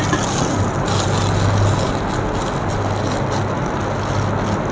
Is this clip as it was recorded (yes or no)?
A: yes